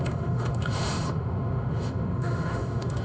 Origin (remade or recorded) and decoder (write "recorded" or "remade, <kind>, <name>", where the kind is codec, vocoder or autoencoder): remade, autoencoder, DAC-VAE